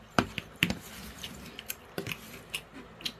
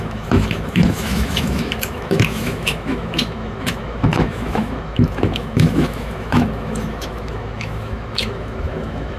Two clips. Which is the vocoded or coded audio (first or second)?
second